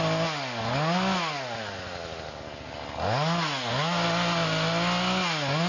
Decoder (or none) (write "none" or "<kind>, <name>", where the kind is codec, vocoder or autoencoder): none